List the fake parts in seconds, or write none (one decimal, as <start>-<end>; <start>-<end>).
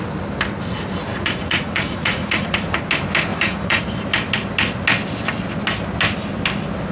1.1-2.8; 3.3-3.8